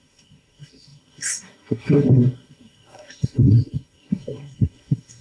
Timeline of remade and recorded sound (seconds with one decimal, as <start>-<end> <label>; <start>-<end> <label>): 0.0-5.2 remade